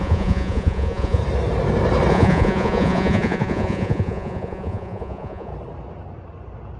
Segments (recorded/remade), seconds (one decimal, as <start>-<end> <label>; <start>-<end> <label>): 0.0-1.2 remade; 1.2-2.1 recorded; 2.1-5.5 remade; 5.5-6.8 recorded